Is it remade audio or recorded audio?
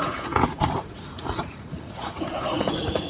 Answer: remade